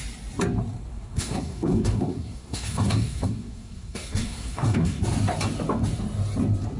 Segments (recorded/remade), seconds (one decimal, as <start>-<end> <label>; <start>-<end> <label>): 0.0-0.9 recorded; 0.9-5.0 remade; 5.0-6.8 recorded

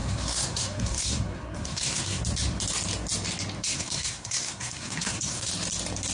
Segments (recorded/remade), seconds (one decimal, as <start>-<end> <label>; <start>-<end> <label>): 0.0-2.2 remade; 2.2-3.6 recorded; 3.6-5.5 remade; 5.5-6.1 recorded

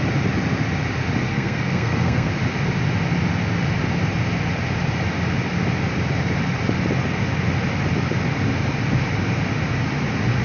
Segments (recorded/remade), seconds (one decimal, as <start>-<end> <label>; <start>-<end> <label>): 0.0-1.3 recorded; 1.3-2.3 remade; 2.3-10.4 recorded

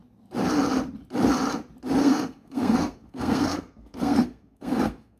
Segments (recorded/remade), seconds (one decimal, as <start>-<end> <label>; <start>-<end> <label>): 0.0-2.0 recorded; 2.0-5.2 remade

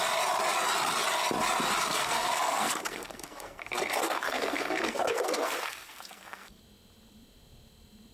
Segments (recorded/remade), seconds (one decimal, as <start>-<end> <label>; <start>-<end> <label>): 0.0-2.0 recorded; 2.0-6.6 remade; 6.6-8.1 recorded